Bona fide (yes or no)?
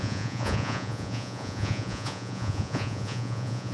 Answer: no